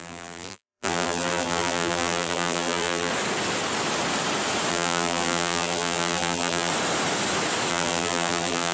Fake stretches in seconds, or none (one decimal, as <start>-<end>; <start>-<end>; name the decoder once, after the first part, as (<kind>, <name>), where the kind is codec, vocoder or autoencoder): 0.0-3.1 (vocoder, BigVGAN v2); 4.7-6.7; 7.7-8.7